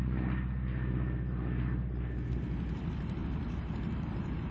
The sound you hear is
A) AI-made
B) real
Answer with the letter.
B